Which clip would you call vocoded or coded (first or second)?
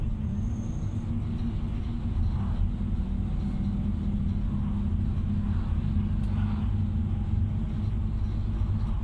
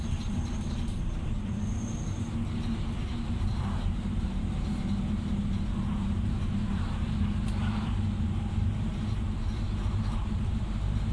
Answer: second